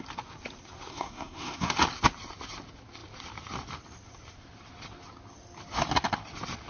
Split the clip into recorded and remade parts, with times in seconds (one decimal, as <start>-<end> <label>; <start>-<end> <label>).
0.0-0.9 recorded; 0.9-1.7 remade; 1.7-6.7 recorded